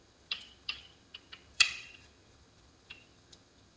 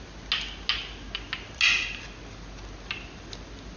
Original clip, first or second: second